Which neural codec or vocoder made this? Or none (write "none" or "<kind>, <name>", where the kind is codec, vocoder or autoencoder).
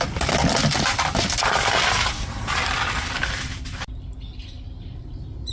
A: vocoder, BigVGAN v2